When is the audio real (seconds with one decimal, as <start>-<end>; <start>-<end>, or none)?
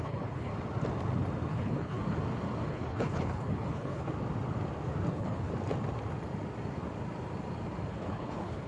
0.5-1.5; 2.0-2.7; 4.1-5.1; 5.5-7.9